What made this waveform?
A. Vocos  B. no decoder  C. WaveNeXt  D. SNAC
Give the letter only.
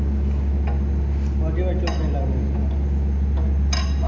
B